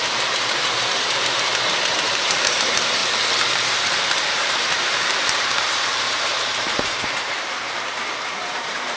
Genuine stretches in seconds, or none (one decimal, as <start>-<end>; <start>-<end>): 3.0-3.5